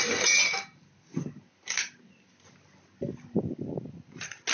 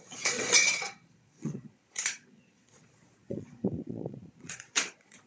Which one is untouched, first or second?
first